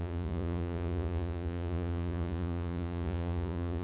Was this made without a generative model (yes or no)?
no